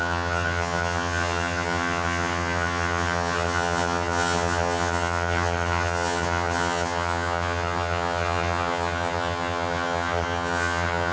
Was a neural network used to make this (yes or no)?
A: yes